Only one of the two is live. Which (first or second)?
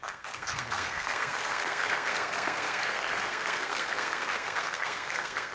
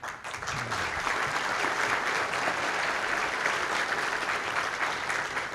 second